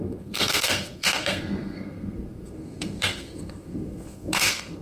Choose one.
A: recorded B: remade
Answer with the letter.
B